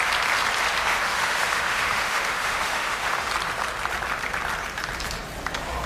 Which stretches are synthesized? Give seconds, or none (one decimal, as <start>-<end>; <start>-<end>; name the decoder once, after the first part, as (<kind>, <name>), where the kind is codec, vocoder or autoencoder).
0.9-3.3 (autoencoder, DAC-VAE)